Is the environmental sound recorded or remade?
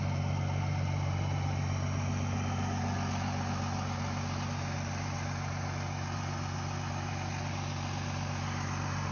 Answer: recorded